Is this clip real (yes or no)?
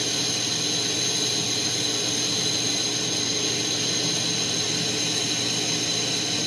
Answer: yes